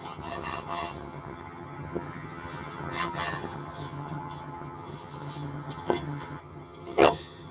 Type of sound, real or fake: fake